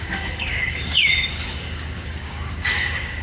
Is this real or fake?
fake